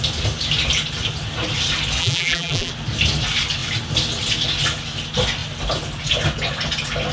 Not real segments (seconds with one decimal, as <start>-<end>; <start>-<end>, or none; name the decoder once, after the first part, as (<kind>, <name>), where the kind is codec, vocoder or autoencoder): 2.0-2.7 (vocoder, BigVGAN v2)